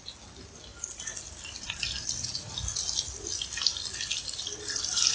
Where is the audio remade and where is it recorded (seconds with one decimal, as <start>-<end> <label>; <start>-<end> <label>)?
0.0-5.1 recorded